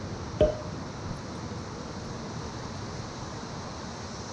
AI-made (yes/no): no